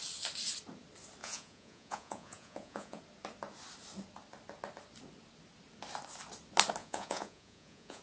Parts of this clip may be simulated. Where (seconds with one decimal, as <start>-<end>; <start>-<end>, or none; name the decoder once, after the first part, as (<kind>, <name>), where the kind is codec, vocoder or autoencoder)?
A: 1.2-3.0 (vocoder, Vocos); 6.8-8.0